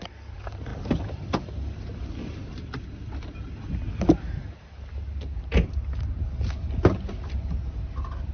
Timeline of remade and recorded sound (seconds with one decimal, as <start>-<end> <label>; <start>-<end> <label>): 0.0-8.3 recorded